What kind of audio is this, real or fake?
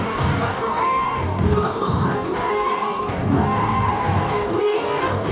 fake